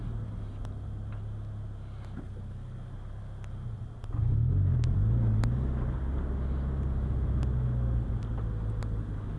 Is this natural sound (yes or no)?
yes